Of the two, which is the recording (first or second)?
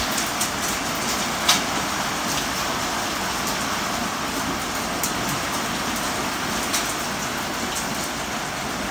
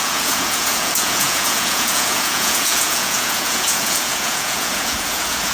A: first